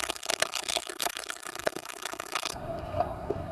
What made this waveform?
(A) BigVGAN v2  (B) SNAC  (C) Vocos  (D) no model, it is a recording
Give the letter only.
B